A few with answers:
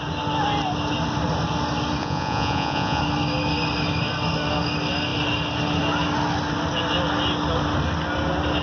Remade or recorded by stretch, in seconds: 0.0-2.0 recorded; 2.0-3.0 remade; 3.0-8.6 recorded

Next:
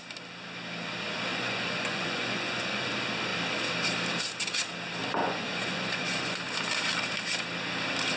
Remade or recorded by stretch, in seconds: 0.0-1.3 recorded; 1.3-2.9 remade; 2.9-5.2 recorded; 5.2-6.5 remade; 6.5-8.2 recorded

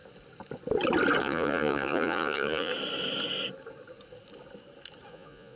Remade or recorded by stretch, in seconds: 0.0-1.2 recorded; 1.2-2.7 remade; 2.7-5.1 recorded; 5.1-5.6 remade

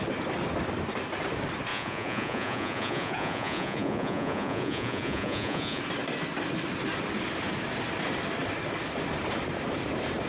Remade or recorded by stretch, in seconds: 0.0-1.7 recorded; 1.7-5.8 remade; 5.8-10.3 recorded